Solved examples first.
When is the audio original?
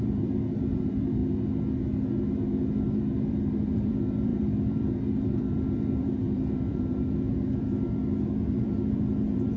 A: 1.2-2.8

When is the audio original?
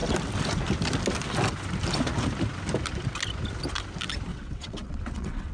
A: 0.0-4.3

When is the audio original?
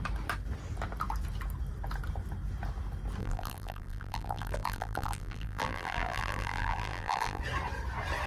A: 0.0-3.2; 7.4-8.3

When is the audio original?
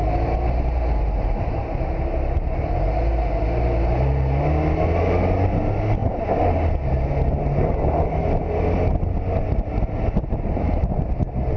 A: 0.0-11.6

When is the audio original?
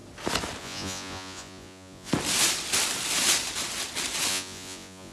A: 0.0-0.6; 2.1-4.3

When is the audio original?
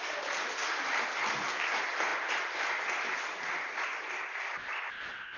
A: 0.0-5.4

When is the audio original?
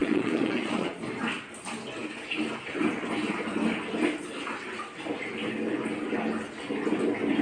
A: 1.0-7.4